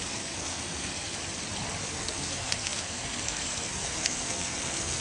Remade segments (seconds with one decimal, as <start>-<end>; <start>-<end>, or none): 0.0-1.2; 1.8-5.0